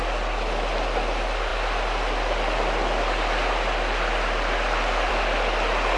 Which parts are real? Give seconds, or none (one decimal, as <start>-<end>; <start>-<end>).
0.0-6.0